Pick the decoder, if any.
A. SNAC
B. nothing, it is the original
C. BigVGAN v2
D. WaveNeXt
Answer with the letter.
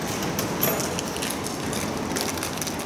B